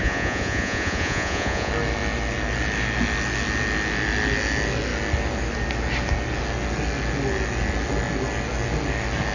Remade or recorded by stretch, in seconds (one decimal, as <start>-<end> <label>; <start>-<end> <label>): 0.0-1.7 remade; 1.7-9.3 recorded

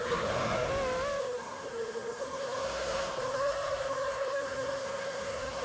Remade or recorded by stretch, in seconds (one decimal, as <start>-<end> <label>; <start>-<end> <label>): 0.0-0.7 remade; 0.7-1.2 recorded; 1.2-5.6 remade

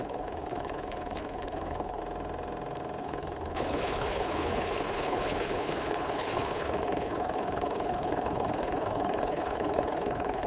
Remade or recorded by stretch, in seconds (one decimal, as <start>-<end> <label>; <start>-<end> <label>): 0.0-2.0 remade; 2.0-3.0 recorded; 3.0-10.5 remade

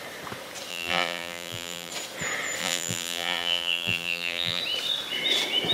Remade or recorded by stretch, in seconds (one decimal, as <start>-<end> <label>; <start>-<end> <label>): 0.0-0.7 recorded; 0.7-1.9 remade; 1.9-2.6 recorded; 2.6-4.6 remade; 4.6-5.7 recorded

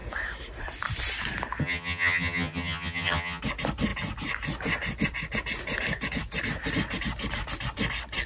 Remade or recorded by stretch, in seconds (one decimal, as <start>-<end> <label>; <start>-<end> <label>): 0.0-1.6 recorded; 1.6-3.4 remade; 3.4-8.3 recorded

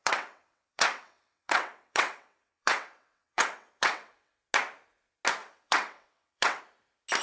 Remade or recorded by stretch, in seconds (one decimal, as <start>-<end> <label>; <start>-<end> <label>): 0.0-4.3 remade; 4.3-5.4 recorded; 5.4-6.6 remade; 6.6-7.2 recorded